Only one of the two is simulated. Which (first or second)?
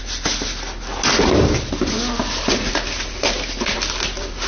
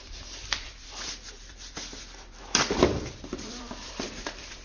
second